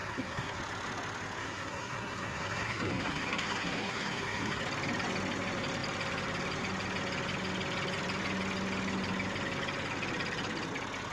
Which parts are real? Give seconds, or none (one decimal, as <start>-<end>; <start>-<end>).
0.6-1.4; 4.6-11.1